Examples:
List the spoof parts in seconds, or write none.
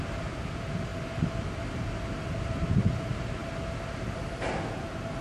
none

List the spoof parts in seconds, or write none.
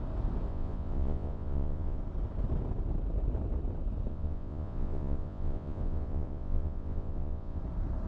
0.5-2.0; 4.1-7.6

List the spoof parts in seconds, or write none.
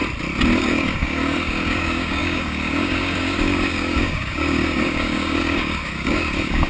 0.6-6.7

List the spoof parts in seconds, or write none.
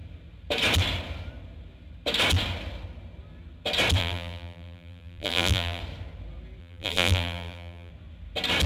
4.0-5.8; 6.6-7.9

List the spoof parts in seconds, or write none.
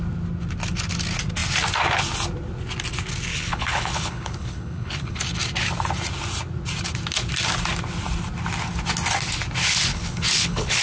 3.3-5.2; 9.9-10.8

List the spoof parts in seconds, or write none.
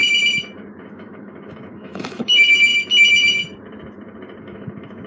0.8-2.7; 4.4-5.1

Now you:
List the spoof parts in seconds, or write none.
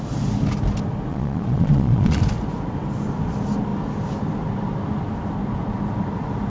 1.1-2.2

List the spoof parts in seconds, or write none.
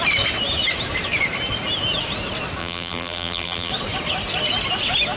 2.6-3.7